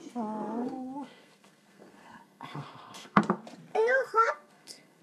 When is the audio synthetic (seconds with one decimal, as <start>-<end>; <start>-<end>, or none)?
0.6-3.2; 3.7-5.0